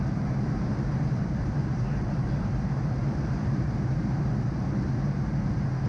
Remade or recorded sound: remade